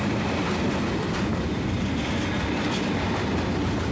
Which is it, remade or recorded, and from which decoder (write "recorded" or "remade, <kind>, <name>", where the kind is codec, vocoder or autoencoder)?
recorded